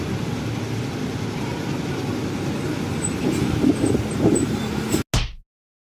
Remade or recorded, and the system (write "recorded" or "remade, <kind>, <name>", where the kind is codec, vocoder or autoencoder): recorded